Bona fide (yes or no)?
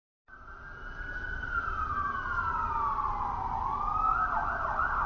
yes